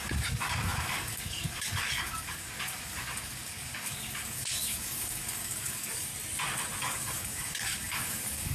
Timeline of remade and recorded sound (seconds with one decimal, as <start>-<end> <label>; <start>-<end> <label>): 0.0-6.1 remade; 6.1-6.8 recorded; 6.8-8.5 remade